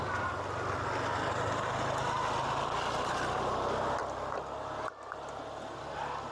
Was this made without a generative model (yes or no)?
yes